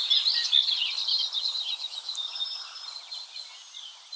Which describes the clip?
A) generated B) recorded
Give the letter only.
B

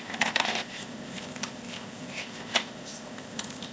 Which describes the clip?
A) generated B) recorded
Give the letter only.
A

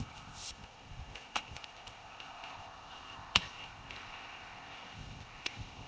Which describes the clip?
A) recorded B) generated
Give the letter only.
B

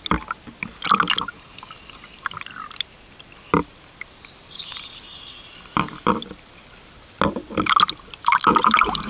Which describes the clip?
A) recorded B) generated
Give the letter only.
A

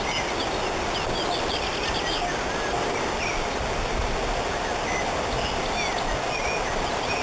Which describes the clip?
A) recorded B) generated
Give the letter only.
A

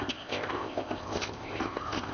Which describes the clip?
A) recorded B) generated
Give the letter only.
B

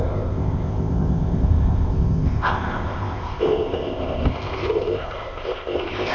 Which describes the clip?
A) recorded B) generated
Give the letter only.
B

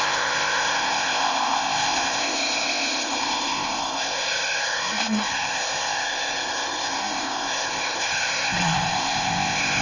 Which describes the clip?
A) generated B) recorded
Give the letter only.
A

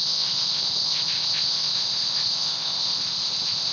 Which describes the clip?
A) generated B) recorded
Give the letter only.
A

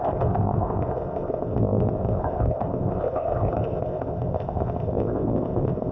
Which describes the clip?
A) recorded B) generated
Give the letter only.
B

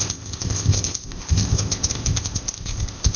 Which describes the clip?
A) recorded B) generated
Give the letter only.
B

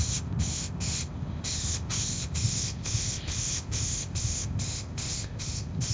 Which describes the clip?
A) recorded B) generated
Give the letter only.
B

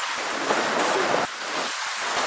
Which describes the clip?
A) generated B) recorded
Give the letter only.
B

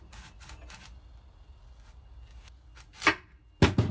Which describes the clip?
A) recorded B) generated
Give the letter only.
A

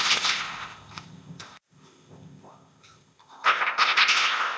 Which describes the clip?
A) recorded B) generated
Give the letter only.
B